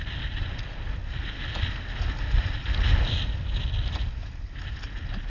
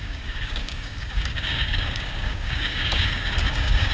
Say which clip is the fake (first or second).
second